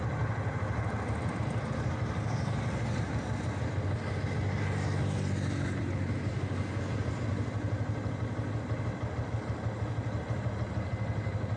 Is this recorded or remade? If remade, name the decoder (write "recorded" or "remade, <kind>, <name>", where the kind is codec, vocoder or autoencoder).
recorded